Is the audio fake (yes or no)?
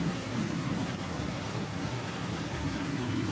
yes